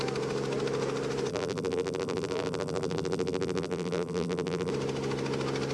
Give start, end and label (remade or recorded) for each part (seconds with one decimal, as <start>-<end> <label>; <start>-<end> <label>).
0.0-1.3 recorded; 1.3-4.7 remade; 4.7-5.7 recorded

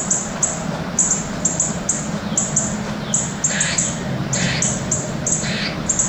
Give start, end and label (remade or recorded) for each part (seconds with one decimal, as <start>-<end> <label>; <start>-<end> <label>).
0.0-6.1 recorded

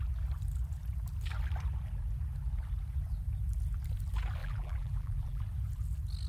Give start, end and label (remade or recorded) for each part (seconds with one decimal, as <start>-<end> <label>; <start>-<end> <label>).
0.0-4.4 recorded; 4.4-5.4 remade; 5.4-6.3 recorded